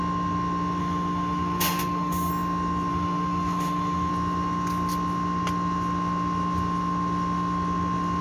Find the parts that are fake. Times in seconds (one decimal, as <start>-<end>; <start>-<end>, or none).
0.8-2.3; 2.9-4.1